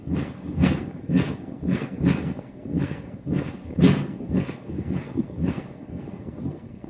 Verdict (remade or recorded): remade